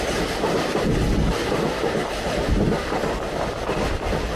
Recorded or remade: recorded